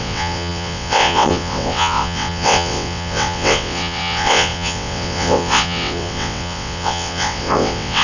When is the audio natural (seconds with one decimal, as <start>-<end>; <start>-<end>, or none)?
none